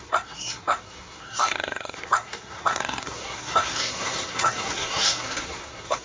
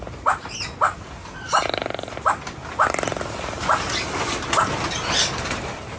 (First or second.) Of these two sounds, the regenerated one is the first